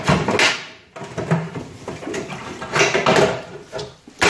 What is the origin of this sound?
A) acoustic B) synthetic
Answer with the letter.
A